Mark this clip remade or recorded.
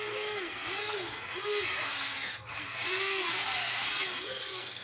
remade